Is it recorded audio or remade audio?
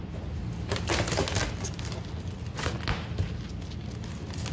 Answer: recorded